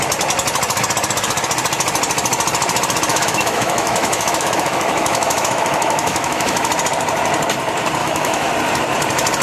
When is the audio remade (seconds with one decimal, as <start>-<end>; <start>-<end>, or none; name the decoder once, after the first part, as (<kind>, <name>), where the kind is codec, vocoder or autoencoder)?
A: 3.1-6.7 (autoencoder, DAC-VAE); 8.0-8.5